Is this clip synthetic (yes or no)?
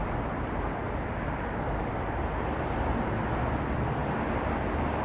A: no